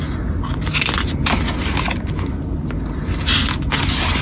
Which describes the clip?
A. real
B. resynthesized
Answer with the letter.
A